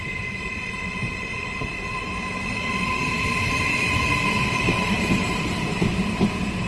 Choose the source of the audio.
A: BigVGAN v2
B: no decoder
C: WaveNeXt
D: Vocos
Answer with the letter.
A